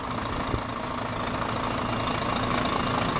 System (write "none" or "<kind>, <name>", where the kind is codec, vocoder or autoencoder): none